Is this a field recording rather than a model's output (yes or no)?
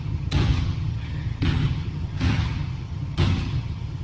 no